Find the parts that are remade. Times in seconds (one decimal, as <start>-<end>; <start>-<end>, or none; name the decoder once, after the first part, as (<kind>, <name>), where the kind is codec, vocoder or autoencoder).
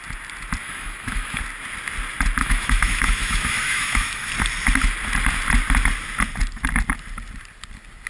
0.6-1.4 (autoencoder, DAC-VAE); 2.4-4.3